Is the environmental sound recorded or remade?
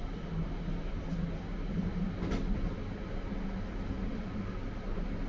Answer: recorded